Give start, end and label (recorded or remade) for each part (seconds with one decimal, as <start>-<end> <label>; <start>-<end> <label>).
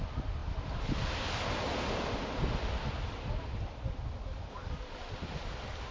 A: 0.0-5.9 recorded